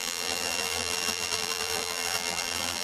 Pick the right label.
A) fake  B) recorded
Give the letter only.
A